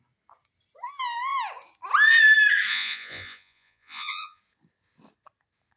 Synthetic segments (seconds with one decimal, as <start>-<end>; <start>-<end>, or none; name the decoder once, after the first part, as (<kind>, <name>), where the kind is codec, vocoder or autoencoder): 2.7-4.4 (vocoder, Vocos)